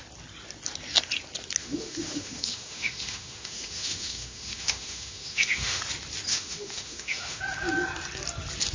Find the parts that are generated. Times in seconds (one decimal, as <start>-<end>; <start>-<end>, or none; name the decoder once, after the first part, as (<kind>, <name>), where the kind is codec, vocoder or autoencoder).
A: 1.6-5.8 (autoencoder, DAC-VAE); 6.3-7.4